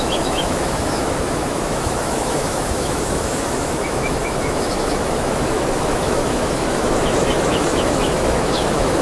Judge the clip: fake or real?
fake